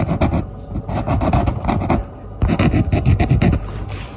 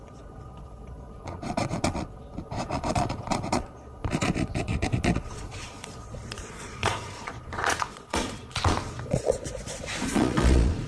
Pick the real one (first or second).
first